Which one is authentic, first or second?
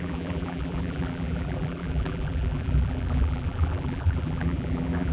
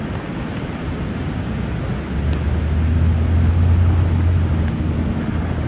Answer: second